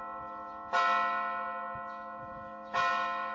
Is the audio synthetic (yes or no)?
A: no